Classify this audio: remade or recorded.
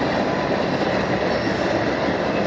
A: recorded